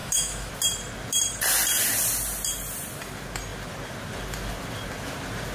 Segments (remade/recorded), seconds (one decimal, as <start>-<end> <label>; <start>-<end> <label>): 0.0-0.5 remade; 0.5-5.5 recorded